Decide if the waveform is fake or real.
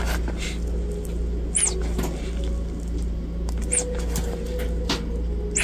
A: real